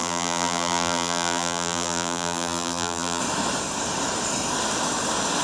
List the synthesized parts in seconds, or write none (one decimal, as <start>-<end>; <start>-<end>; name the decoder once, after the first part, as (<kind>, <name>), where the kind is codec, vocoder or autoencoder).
0.0-3.2 (vocoder, BigVGAN v2)